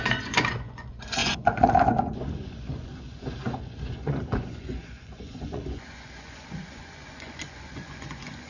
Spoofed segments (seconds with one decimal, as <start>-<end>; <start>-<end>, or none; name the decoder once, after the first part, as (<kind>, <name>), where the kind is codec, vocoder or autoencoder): 0.0-8.5 (vocoder, Vocos)